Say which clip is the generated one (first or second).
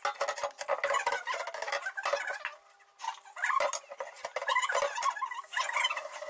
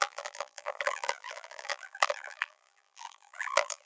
second